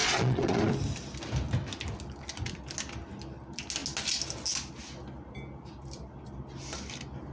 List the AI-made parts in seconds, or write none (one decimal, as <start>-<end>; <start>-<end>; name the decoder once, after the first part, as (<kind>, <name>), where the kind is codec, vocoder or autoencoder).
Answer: 0.0-0.7 (vocoder, Vocos)